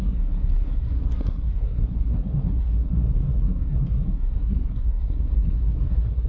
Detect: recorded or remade remade